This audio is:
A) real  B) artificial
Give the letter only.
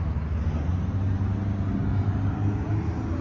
A